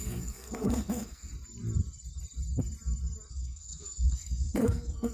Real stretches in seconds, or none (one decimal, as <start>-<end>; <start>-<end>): 1.3-3.3